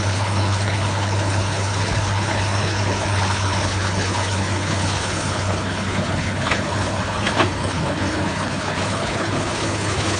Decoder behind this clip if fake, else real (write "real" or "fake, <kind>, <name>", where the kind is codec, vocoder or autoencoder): fake, codec, HILCodec